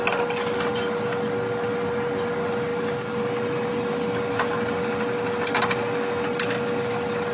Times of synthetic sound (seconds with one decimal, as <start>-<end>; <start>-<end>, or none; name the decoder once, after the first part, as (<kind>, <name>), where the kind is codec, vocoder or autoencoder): none

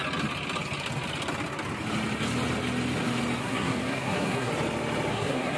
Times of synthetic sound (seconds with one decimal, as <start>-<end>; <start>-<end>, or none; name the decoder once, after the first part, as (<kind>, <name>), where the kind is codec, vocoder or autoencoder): 3.4-4.5 (codec, SNAC); 5.1-5.6

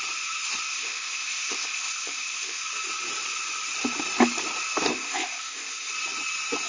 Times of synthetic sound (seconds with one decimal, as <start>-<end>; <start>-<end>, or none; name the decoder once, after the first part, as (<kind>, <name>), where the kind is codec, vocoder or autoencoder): 0.7-2.6 (codec, ZipCodec); 4.9-5.9

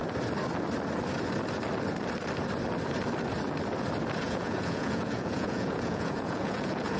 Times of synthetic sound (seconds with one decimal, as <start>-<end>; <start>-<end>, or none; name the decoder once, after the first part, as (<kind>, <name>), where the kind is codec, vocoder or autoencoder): 4.2-7.0 (vocoder, Vocos)

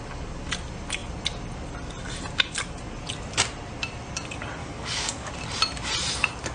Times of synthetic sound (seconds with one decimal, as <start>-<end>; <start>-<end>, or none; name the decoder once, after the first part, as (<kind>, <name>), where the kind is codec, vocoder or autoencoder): 4.6-5.3 (codec, DAC)